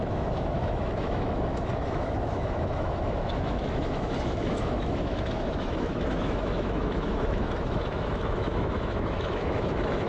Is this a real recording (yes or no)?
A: no